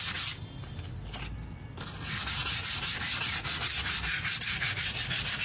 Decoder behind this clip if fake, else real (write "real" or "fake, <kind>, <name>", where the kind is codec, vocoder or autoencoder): real